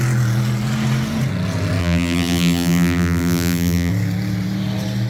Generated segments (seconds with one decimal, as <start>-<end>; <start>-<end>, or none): 1.8-3.9